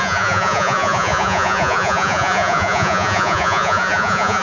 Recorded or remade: remade